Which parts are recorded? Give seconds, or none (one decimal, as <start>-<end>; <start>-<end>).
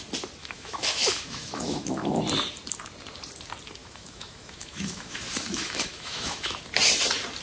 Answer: 0.0-0.4; 2.2-3.8; 6.6-7.4